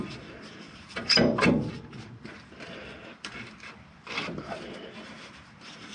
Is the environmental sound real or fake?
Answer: fake